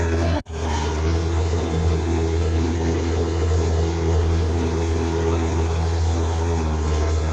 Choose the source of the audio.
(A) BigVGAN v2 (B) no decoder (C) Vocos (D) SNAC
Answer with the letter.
D